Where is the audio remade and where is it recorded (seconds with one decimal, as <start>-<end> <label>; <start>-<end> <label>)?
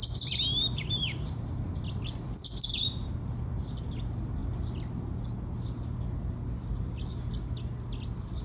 0.0-4.4 remade; 4.4-7.2 recorded; 7.2-8.4 remade